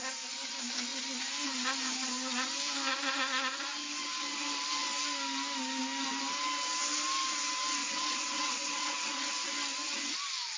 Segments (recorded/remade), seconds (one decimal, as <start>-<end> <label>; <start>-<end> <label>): 0.0-7.8 recorded; 7.8-9.3 remade; 9.3-10.6 recorded